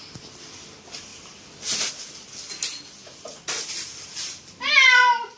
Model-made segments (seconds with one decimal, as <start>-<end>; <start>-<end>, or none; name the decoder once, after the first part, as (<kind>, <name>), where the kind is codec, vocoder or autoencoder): none